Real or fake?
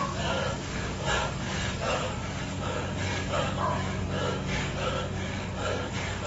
fake